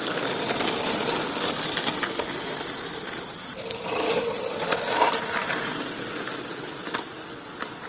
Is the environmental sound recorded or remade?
recorded